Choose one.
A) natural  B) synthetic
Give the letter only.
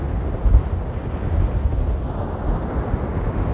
A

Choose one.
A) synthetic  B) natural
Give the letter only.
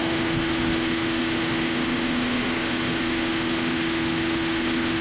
A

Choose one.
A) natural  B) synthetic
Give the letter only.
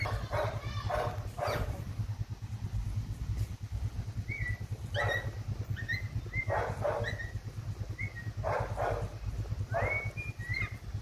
A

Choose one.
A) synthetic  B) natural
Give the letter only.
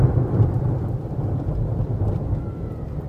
B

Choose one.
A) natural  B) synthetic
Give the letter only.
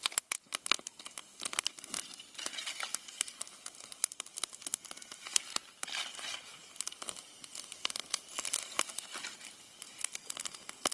A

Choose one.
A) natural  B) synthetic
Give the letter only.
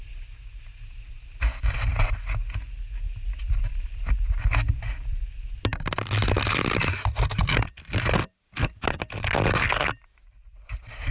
A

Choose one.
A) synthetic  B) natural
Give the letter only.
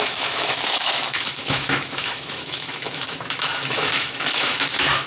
A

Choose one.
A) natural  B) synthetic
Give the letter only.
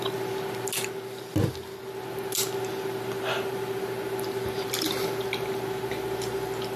A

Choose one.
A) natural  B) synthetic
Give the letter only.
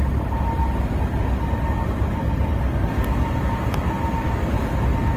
A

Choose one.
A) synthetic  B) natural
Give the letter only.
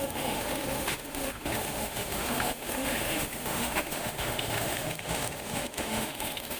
A